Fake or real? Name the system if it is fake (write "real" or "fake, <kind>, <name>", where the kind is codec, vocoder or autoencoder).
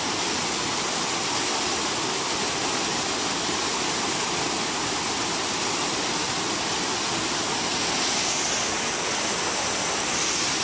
real